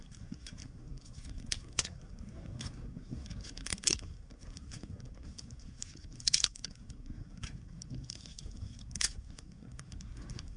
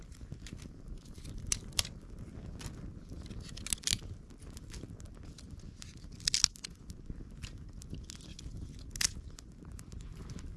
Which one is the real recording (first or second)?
second